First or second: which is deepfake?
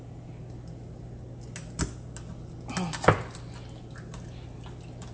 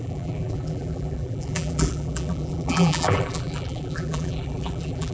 second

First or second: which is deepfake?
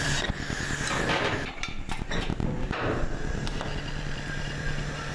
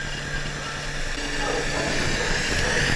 first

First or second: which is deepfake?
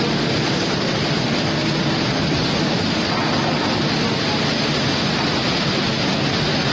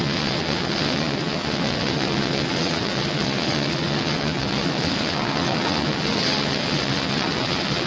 second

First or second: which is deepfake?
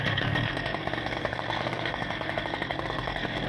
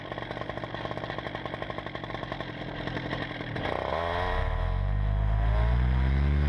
first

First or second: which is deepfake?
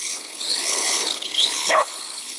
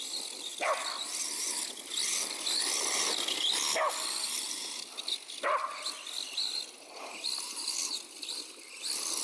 first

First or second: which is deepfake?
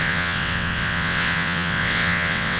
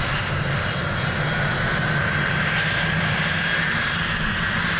first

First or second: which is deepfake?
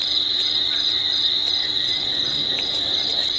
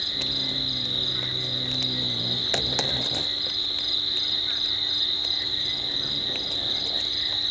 first